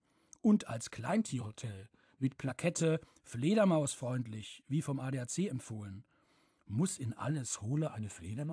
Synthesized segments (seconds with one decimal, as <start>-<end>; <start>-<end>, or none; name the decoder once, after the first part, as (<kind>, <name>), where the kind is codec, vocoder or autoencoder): 1.1-2.5 (codec, SNAC); 7.3-8.5